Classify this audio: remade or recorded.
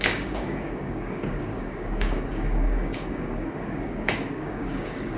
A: remade